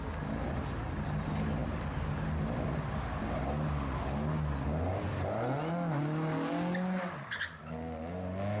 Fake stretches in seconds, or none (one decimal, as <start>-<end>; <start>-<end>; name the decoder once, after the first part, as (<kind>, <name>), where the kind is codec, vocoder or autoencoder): none